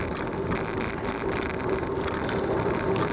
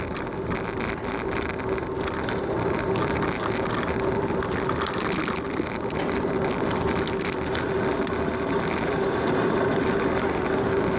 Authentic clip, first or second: second